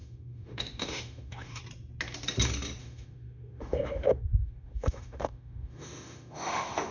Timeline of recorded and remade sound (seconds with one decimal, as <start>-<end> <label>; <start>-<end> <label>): 0.0-1.6 remade; 1.6-2.8 recorded; 2.8-6.9 remade